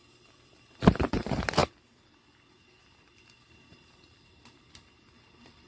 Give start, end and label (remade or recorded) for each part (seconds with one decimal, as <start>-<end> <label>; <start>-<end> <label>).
0.0-5.7 recorded